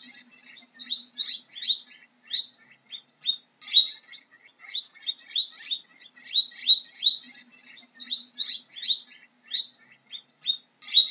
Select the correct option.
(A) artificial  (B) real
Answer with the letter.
B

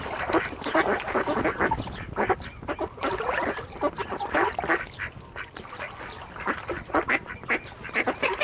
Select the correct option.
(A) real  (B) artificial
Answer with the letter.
A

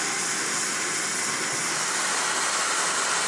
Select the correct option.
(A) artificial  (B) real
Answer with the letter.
B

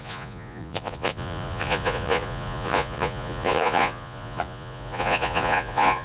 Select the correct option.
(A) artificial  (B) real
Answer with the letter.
A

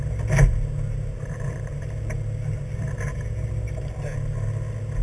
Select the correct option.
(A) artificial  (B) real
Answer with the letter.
B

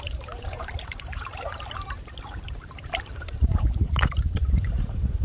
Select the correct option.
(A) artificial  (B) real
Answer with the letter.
A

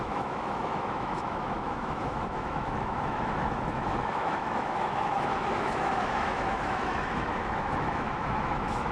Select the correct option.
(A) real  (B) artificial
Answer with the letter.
B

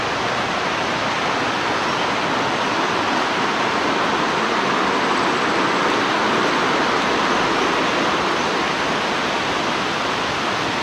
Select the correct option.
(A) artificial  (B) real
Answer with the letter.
B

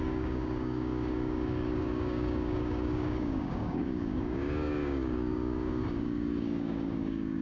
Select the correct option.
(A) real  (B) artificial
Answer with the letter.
B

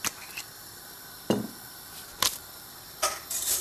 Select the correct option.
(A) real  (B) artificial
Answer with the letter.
B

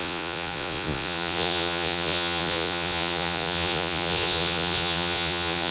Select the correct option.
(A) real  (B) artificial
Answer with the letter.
B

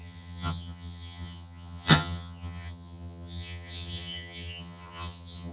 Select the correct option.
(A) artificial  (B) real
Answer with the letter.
A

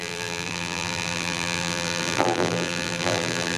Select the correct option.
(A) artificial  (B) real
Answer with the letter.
A